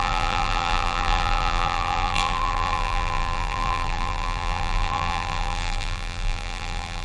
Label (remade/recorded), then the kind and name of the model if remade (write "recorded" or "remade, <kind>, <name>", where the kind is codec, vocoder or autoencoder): remade, vocoder, BigVGAN v2